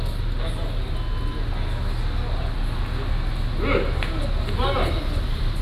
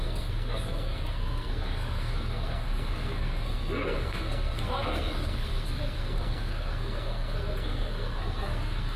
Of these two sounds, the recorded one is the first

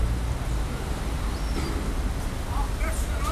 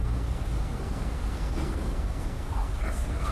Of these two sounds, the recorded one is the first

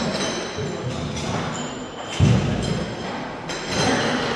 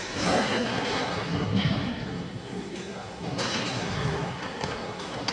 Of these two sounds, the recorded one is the first